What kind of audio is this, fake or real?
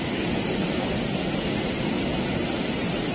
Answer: real